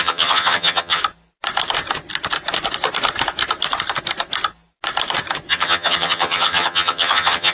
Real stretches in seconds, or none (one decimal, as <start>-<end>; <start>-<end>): 1.0-5.5